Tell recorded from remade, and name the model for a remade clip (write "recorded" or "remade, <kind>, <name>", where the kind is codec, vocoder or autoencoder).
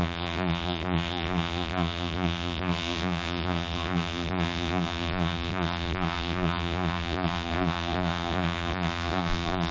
remade, vocoder, BigVGAN v2